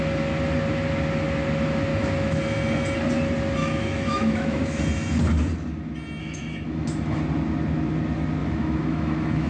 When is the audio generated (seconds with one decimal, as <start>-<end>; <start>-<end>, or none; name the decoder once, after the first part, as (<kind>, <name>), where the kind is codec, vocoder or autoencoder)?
1.9-2.4 (autoencoder, DAC-VAE); 3.6-4.8; 6.2-7.2; 8.4-9.5

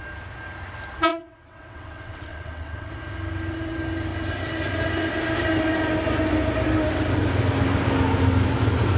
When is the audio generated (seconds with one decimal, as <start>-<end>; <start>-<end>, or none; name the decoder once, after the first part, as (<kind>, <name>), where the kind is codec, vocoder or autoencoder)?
1.1-2.9 (vocoder, WaveNeXt)